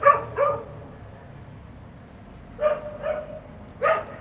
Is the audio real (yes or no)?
yes